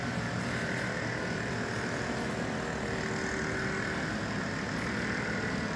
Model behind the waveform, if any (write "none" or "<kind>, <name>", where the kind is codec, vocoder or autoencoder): none